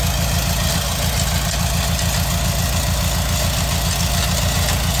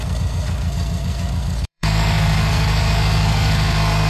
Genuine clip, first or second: first